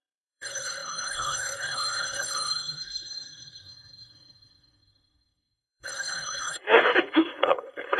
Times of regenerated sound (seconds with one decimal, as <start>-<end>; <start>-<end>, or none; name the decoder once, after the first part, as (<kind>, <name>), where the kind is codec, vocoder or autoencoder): 0.0-8.0 (codec, SNAC)